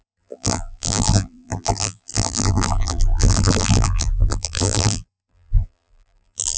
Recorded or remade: remade